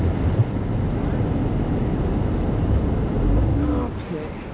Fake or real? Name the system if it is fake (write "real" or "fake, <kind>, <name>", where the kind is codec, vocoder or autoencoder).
real